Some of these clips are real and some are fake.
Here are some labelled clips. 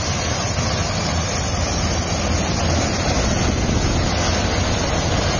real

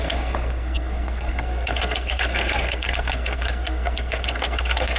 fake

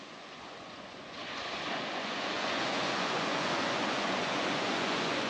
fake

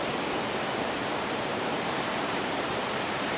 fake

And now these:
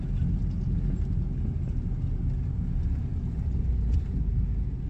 real